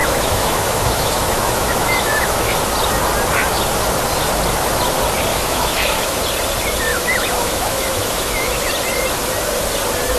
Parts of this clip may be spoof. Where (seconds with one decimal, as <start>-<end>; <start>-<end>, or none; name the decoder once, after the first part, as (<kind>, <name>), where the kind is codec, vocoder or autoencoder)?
0.0-2.5 (autoencoder, DAC-VAE); 5.3-6.2; 6.9-8.6